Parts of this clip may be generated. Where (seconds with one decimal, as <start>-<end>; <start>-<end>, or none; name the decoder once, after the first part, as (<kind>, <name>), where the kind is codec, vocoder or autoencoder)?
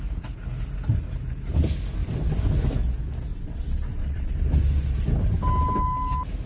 3.3-4.3 (vocoder, WaveNeXt)